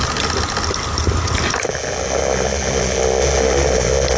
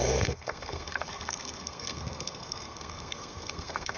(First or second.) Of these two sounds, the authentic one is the first